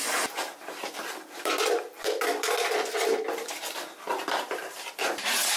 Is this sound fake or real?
fake